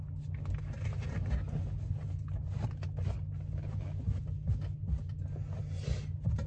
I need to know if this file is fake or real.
real